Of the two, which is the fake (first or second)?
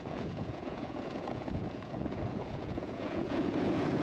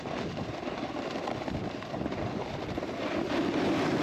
first